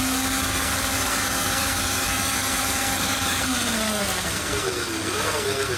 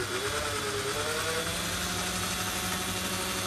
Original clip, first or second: second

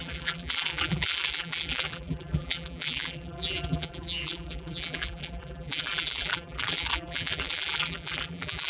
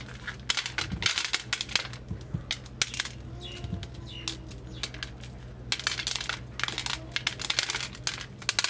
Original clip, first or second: second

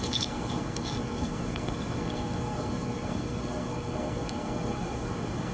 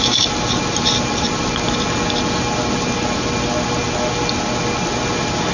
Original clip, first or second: second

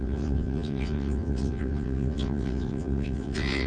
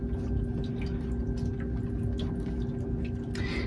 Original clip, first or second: second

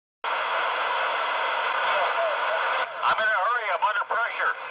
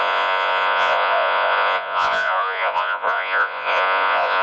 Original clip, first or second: first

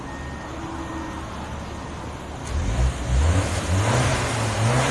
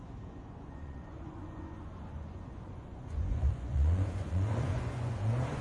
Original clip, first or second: first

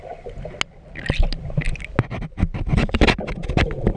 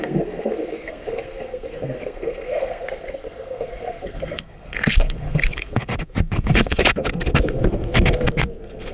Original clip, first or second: first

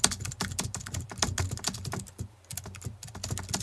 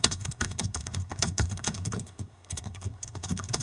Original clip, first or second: first